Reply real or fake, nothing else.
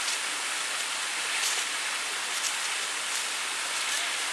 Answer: real